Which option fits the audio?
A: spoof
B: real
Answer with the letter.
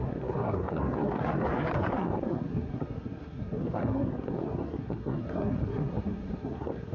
A